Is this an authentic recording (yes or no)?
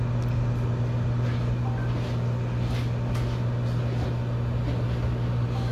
yes